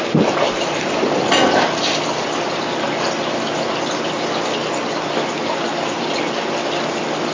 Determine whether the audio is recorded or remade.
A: recorded